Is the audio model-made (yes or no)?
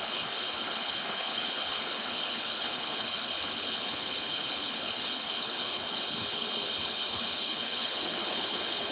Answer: yes